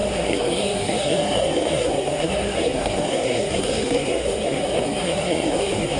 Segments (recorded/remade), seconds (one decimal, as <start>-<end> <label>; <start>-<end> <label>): 0.0-6.0 remade